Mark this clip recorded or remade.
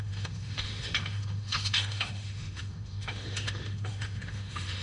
remade